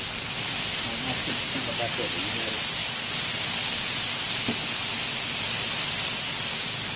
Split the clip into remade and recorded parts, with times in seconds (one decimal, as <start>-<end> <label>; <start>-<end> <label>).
0.0-1.2 recorded; 1.2-1.8 remade; 1.8-7.0 recorded